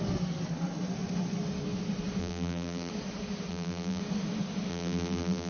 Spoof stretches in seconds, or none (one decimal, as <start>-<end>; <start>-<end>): 2.2-2.9; 3.5-4.0; 4.7-5.5